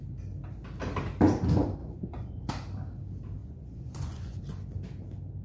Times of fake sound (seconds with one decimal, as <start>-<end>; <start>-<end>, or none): 1.8-2.5; 3.4-4.4